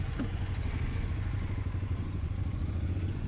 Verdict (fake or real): fake